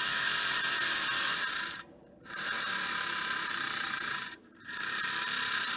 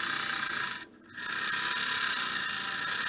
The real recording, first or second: second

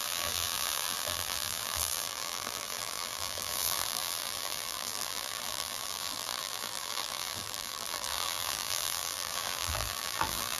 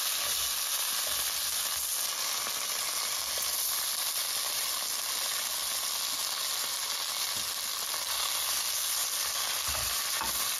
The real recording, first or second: second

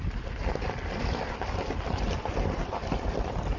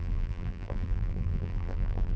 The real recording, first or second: first